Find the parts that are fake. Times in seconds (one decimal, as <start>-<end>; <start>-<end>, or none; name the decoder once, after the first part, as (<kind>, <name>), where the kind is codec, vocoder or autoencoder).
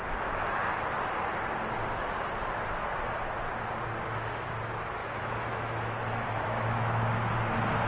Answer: 5.0-7.1 (autoencoder, DAC-VAE)